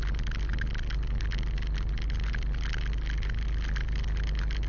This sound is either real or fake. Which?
real